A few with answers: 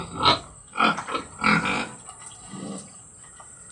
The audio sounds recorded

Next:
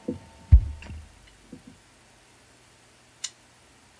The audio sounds recorded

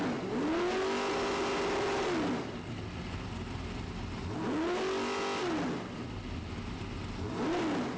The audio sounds recorded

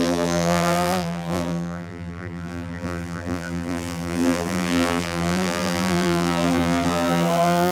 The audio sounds remade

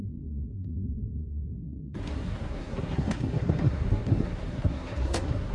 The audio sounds remade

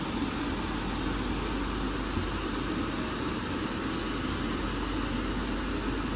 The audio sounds recorded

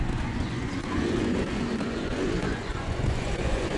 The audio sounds remade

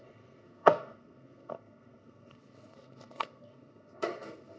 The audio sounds remade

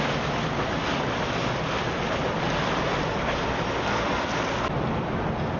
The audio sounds recorded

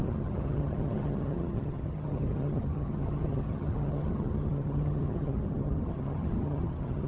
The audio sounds remade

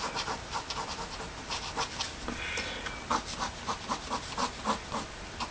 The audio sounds recorded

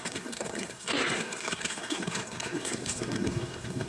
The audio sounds remade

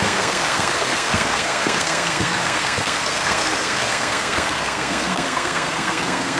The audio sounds remade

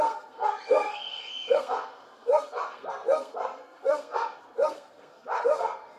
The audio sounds remade